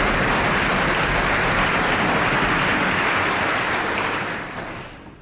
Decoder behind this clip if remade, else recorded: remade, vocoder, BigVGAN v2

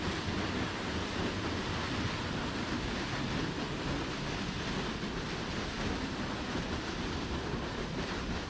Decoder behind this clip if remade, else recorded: recorded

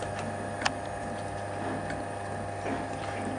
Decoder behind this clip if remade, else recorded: recorded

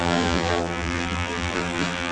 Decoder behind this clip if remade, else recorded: remade, vocoder, BigVGAN v2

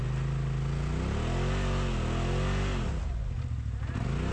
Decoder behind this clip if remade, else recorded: recorded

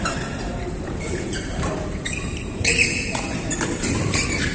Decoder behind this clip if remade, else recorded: remade, vocoder, BigVGAN v2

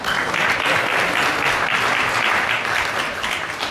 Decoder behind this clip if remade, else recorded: recorded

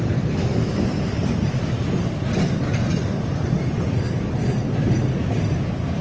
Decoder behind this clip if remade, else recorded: remade, vocoder, BigVGAN v2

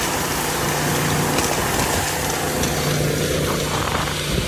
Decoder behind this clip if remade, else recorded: recorded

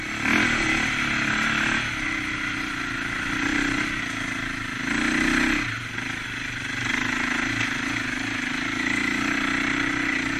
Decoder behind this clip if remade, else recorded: recorded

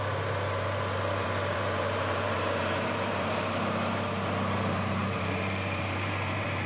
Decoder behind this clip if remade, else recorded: remade, vocoder, BigVGAN v2